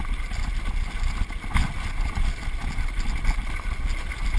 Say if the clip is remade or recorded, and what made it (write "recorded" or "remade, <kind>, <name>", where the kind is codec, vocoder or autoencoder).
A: recorded